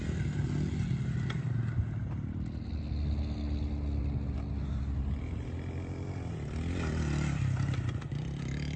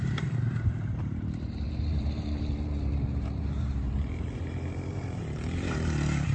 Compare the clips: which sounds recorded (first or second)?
first